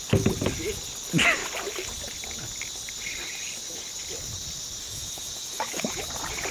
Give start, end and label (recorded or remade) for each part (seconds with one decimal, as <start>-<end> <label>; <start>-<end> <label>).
0.0-4.8 recorded; 4.8-5.8 remade; 5.8-6.5 recorded